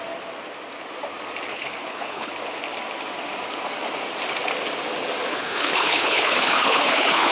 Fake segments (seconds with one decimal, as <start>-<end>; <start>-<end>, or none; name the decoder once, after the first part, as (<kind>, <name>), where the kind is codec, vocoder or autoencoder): 1.5-2.3 (codec, HILCodec); 5.3-7.3